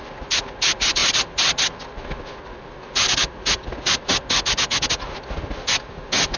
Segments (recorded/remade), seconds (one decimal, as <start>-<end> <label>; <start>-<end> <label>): 0.0-6.4 recorded